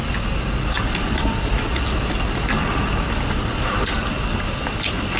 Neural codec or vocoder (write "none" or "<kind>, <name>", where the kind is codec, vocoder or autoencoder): none